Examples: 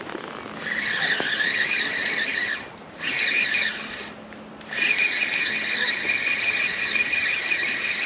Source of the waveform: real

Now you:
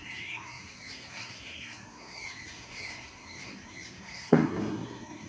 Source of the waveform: fake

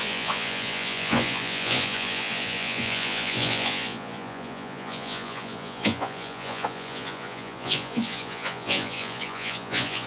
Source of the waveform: fake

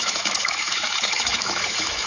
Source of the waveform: fake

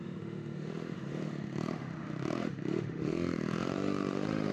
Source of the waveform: fake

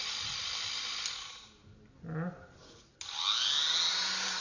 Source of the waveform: real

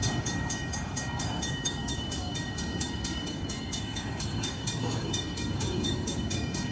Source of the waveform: fake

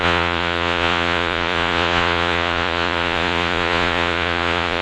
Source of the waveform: fake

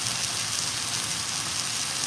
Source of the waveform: real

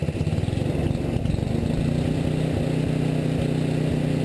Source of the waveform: real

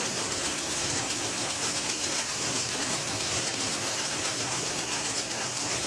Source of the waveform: fake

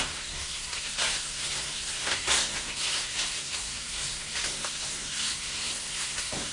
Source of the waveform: fake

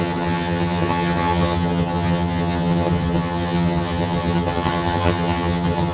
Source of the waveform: fake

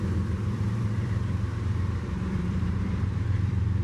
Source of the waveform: fake